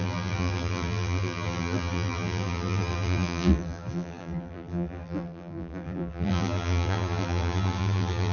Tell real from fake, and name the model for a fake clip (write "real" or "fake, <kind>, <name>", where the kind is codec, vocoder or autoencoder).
fake, vocoder, BigVGAN v2